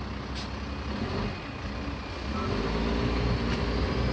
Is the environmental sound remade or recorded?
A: recorded